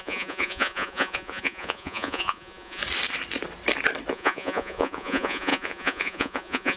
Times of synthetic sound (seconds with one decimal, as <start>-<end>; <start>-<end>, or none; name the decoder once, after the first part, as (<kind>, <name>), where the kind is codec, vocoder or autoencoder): 0.0-2.8 (vocoder, Vocos); 4.1-6.8